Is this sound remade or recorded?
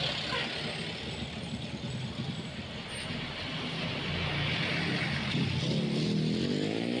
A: recorded